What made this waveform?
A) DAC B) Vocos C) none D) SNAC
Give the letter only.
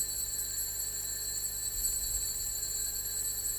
C